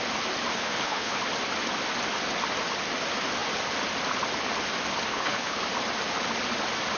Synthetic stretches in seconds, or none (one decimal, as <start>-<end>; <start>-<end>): 0.5-1.2; 5.1-5.6